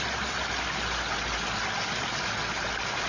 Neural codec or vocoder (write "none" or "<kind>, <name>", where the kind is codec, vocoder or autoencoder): none